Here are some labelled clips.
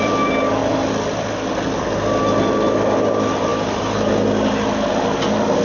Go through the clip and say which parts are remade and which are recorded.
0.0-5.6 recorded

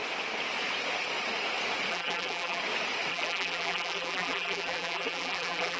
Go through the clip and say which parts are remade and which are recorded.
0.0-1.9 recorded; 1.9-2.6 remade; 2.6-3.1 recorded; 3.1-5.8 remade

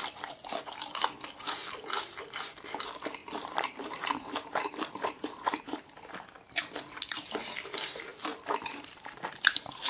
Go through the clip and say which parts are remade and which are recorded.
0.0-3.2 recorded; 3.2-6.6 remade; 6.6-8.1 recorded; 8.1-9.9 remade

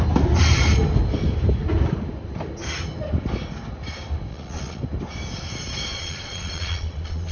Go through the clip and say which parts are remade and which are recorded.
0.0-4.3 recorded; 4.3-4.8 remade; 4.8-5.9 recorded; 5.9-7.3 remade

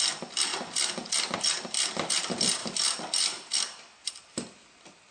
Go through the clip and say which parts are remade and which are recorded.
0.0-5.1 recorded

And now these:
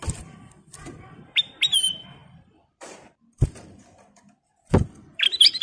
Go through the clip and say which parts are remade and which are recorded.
0.0-5.6 remade

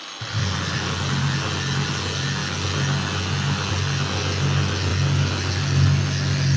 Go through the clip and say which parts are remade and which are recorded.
0.0-6.6 recorded

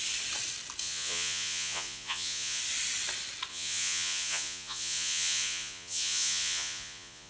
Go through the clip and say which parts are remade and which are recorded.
0.0-0.8 recorded; 0.8-2.6 remade; 2.6-3.5 recorded; 3.5-7.3 remade